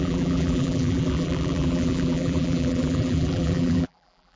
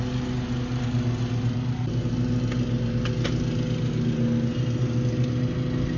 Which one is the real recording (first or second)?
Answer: second